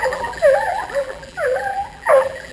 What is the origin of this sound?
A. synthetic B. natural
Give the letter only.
A